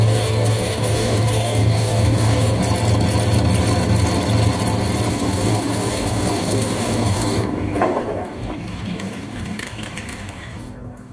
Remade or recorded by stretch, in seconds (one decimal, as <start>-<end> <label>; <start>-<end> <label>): 0.0-2.6 remade; 2.6-5.1 recorded; 5.1-11.1 remade

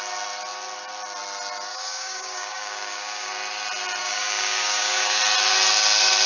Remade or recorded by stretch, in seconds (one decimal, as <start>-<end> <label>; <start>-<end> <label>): 0.0-1.7 recorded; 1.7-3.3 remade; 3.3-4.0 recorded; 4.0-5.2 remade; 5.2-6.3 recorded

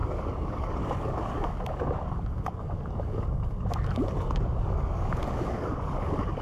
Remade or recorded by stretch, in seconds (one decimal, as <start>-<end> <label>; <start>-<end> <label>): 0.0-6.4 remade

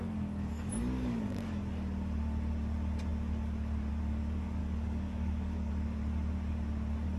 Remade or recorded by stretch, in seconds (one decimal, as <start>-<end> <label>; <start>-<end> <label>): 0.0-1.6 remade; 1.6-4.6 recorded; 4.6-5.7 remade; 5.7-7.2 recorded

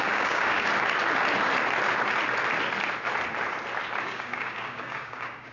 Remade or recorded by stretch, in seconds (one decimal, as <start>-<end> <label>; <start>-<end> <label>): 0.0-0.7 remade; 0.7-4.0 recorded; 4.0-5.5 remade

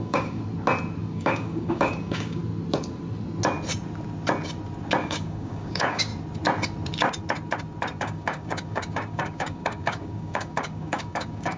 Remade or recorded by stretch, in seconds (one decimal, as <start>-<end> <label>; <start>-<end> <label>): 0.0-0.4 remade; 0.4-1.0 recorded; 1.0-2.4 remade; 2.4-5.0 recorded; 5.0-6.1 remade; 6.1-8.0 recorded; 8.0-11.6 remade